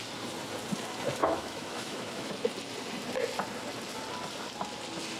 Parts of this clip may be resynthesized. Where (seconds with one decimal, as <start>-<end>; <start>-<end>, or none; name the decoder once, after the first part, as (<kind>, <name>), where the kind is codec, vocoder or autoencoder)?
1.2-2.3 (autoencoder, DAC-VAE)